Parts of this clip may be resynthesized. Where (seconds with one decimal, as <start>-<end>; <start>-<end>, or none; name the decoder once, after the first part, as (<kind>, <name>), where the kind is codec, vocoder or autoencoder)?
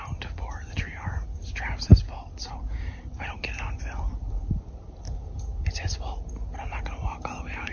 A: none